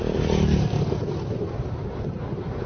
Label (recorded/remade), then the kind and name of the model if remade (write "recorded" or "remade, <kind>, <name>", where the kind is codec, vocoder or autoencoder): recorded